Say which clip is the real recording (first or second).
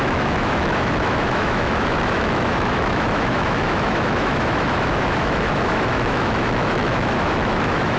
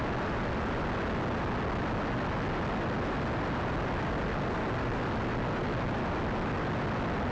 second